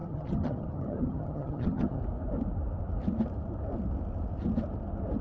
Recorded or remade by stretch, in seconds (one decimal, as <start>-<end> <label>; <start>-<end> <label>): 0.0-2.0 remade; 2.0-5.2 recorded